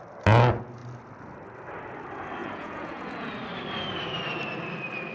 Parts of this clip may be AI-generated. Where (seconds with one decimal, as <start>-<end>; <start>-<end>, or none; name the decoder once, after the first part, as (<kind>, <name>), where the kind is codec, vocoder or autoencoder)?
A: 2.4-3.3 (vocoder, Vocos)